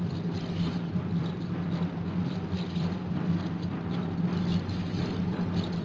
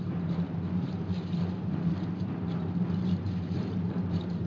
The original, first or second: first